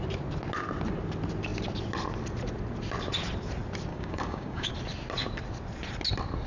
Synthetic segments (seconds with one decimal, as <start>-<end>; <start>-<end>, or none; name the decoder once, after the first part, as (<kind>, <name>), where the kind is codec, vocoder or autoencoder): 3.9-4.7 (codec, DAC)